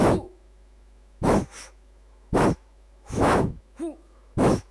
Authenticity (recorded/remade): remade